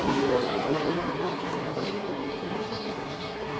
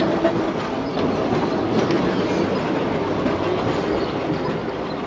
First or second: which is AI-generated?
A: first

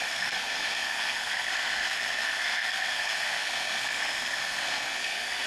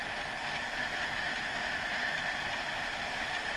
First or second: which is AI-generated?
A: first